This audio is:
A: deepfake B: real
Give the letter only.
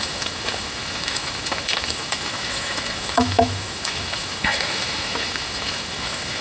A